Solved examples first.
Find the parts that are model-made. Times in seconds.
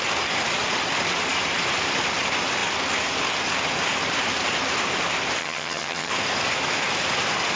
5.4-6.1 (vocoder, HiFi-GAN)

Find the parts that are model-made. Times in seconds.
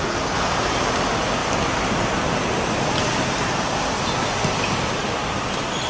none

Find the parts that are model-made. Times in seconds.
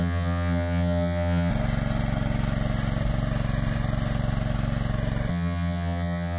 0.0-1.5 (vocoder, HiFi-GAN); 5.3-6.4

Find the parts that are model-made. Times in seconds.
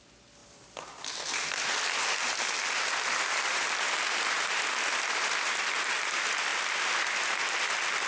none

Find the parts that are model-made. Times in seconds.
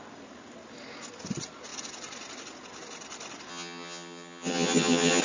3.5-5.2 (vocoder, HiFi-GAN)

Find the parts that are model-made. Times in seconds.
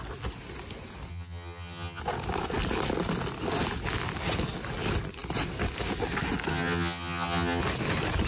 1.1-2.0 (vocoder, HiFi-GAN); 6.5-7.6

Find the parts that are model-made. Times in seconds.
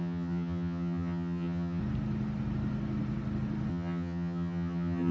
0.0-1.8 (vocoder, HiFi-GAN); 3.7-5.1